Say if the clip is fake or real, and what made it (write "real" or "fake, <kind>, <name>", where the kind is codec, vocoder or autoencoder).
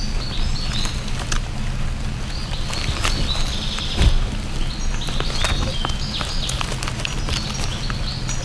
real